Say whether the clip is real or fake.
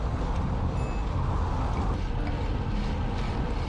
real